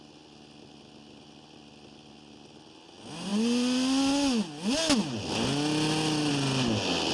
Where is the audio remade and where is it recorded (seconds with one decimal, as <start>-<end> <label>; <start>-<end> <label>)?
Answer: 0.0-7.1 recorded